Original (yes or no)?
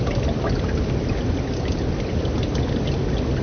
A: yes